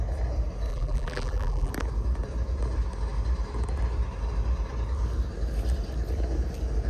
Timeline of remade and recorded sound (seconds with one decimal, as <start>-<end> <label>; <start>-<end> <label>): 0.0-0.7 recorded; 0.7-1.7 remade; 1.7-6.9 recorded